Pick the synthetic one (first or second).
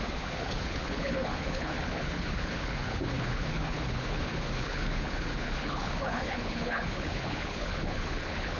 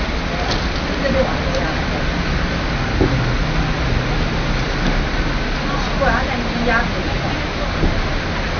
first